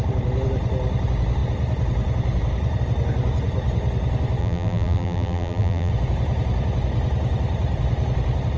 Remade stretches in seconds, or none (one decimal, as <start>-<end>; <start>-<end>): 4.4-5.9